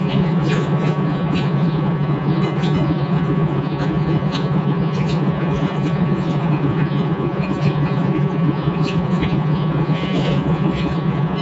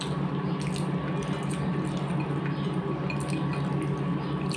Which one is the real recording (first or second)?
second